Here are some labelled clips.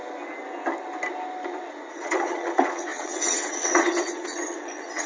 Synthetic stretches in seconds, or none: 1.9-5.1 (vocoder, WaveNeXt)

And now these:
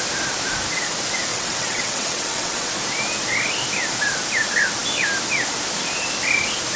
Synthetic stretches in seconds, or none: 1.3-2.7 (vocoder, WaveNeXt)

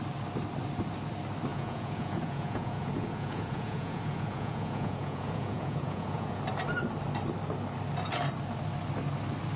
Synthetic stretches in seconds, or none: 1.5-6.4 (vocoder, Vocos)

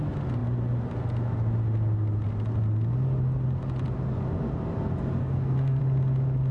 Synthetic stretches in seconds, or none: 5.2-5.8 (codec, SNAC)